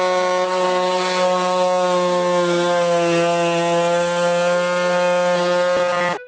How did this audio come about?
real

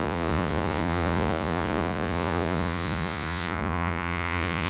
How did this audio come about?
fake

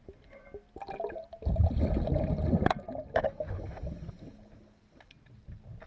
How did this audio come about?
real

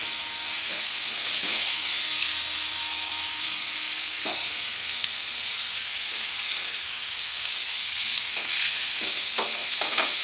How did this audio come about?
fake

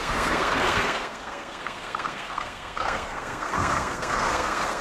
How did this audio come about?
fake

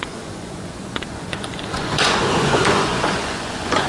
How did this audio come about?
fake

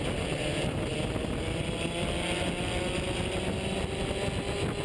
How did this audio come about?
real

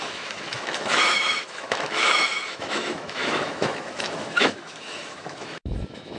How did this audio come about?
fake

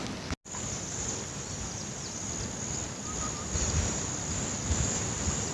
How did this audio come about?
real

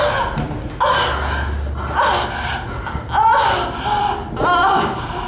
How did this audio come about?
real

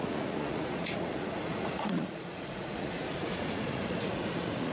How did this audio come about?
fake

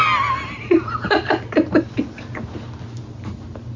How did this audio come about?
real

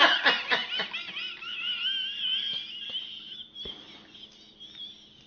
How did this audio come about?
real